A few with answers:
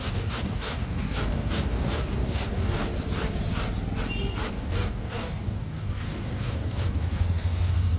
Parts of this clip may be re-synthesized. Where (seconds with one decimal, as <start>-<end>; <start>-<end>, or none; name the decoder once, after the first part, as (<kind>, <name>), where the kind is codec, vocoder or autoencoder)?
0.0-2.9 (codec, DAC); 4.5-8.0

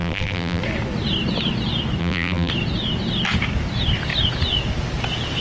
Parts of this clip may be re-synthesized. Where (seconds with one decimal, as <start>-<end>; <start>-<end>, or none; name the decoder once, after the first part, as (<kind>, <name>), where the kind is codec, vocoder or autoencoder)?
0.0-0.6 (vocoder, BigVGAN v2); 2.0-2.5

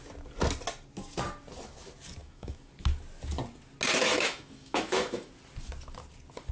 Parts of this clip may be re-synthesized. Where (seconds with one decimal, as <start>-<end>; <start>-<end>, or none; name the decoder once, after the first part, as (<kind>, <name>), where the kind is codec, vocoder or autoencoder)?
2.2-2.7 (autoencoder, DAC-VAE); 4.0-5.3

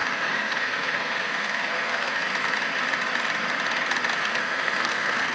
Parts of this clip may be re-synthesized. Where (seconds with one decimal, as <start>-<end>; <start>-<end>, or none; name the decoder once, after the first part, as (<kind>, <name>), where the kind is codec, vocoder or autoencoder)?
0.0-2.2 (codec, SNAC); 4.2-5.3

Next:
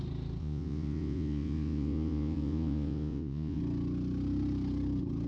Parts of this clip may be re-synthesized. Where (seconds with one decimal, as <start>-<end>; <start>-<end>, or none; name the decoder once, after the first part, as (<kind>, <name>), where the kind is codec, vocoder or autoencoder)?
0.4-3.6 (vocoder, Vocos)

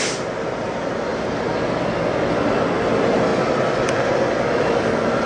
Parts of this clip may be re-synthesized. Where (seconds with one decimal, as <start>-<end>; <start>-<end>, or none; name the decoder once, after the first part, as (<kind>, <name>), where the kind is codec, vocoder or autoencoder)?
none

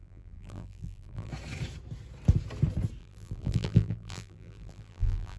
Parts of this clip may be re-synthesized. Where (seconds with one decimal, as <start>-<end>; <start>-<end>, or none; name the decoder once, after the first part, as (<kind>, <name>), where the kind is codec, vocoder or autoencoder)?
0.0-1.3 (vocoder, BigVGAN v2); 3.0-5.4

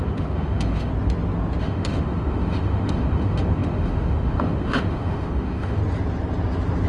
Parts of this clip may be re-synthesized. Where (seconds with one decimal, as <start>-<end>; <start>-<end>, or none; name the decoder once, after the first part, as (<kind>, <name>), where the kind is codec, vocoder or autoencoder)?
0.0-0.9 (autoencoder, DAC-VAE); 1.6-5.8